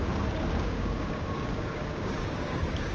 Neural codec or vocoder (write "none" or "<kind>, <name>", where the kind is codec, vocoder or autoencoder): codec, DAC